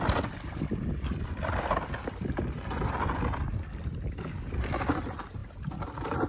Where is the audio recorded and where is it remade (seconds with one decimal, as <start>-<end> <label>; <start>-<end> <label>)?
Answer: 0.0-6.3 recorded